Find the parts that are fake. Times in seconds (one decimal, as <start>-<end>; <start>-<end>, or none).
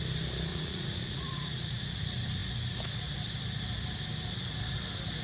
0.5-2.0